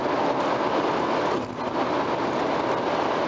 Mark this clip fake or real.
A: real